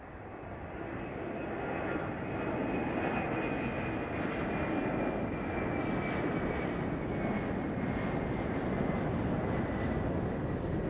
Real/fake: real